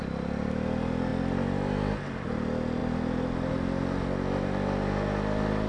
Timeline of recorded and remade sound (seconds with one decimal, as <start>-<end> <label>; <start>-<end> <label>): 0.0-5.7 recorded